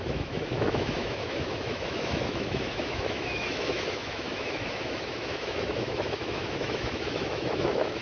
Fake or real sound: fake